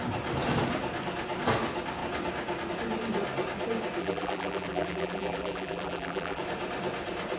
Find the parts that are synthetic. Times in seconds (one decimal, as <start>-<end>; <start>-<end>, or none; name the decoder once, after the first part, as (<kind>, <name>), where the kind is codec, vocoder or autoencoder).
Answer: 4.0-6.4 (vocoder, BigVGAN v2)